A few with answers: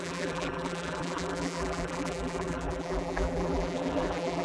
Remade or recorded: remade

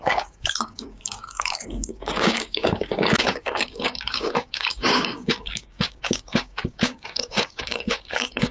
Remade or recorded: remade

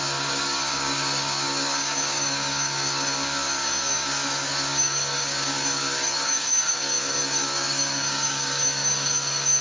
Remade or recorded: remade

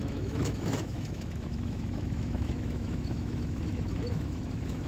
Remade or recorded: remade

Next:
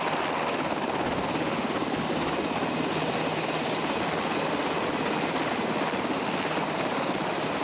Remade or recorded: recorded